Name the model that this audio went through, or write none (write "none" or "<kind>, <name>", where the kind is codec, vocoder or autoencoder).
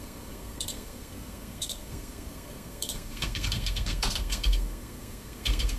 codec, SNAC